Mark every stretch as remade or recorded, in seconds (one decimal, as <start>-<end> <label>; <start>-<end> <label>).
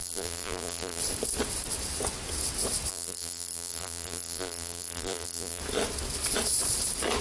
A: 0.0-1.0 remade; 1.0-2.9 recorded; 2.9-5.6 remade; 5.6-7.2 recorded